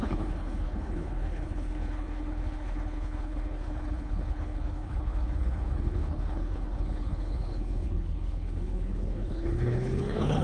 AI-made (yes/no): yes